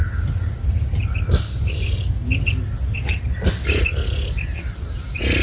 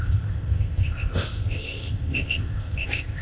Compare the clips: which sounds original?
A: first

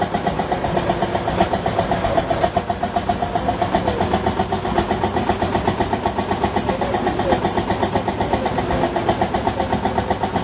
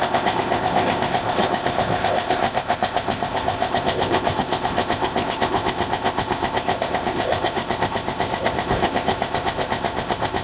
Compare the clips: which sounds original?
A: first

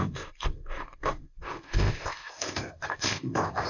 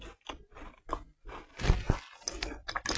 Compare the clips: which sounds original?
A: second